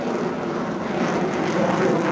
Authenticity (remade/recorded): recorded